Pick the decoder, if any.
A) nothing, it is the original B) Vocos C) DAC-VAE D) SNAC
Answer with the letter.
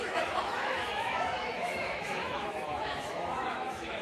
C